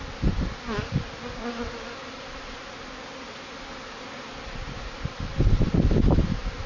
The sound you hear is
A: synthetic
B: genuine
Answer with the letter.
B